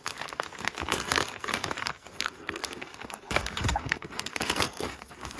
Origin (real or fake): fake